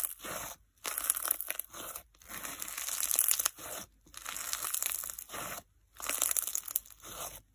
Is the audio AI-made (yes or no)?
no